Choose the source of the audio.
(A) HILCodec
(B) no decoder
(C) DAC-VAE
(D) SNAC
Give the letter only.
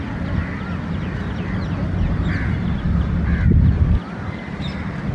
B